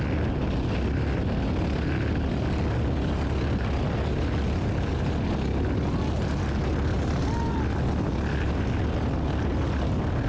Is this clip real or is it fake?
real